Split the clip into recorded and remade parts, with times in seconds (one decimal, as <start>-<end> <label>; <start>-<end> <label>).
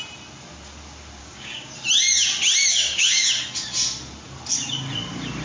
0.0-1.2 recorded; 1.2-1.7 remade; 1.7-2.7 recorded; 2.7-3.3 remade; 3.3-5.4 recorded